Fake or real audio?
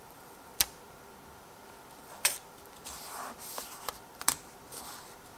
fake